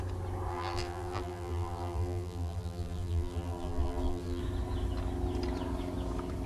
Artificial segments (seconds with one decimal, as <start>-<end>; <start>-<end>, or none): 0.5-4.4